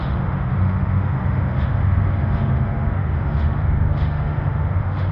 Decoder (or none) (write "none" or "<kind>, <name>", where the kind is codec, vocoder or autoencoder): autoencoder, DAC-VAE